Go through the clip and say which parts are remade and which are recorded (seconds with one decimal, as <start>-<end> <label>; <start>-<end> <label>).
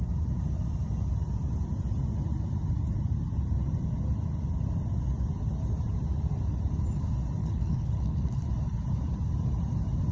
0.0-7.4 recorded; 7.4-8.5 remade; 8.5-10.1 recorded